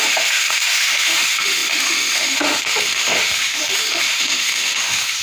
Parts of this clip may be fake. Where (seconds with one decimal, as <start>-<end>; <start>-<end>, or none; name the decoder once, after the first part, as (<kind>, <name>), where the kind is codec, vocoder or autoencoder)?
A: 0.0-5.2 (autoencoder, DAC-VAE)